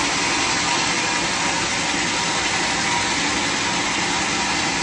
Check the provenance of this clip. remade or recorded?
recorded